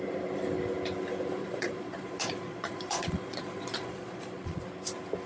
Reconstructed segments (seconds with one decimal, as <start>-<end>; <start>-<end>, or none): 1.4-4.6